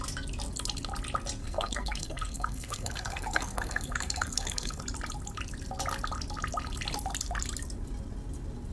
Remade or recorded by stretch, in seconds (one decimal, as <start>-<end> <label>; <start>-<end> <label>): 0.0-1.4 recorded; 1.4-4.8 remade; 4.8-8.7 recorded